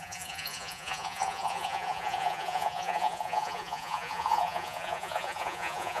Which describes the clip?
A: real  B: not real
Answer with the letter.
B